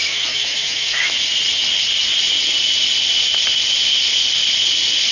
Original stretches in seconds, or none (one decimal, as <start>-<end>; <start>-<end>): 1.1-5.1